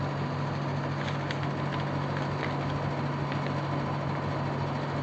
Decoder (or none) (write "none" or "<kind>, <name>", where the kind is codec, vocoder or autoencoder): none